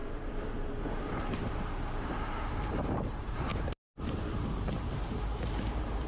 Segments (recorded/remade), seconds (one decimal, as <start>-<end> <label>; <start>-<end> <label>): 0.0-6.1 remade